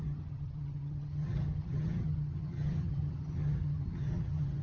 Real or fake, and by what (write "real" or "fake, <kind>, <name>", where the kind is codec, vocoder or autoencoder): fake, vocoder, HiFi-GAN